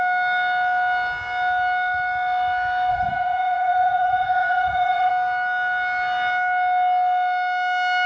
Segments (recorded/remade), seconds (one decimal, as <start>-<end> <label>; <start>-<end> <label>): 0.0-2.9 recorded; 2.9-5.1 remade; 5.1-8.1 recorded